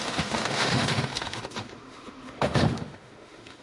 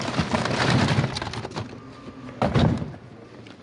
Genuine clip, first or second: second